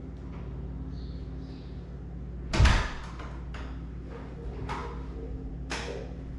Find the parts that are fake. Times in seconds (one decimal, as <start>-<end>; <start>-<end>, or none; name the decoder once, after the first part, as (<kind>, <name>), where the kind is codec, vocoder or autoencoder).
none